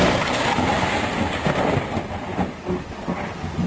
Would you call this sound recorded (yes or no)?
yes